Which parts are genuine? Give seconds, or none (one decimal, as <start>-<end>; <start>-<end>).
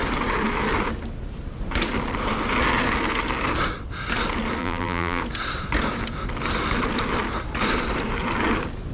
0.0-4.6; 5.2-8.9